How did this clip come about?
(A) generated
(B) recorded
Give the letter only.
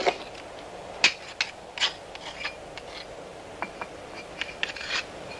B